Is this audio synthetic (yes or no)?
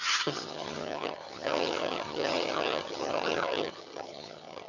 yes